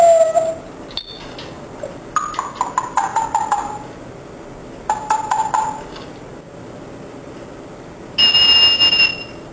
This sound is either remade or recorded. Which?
recorded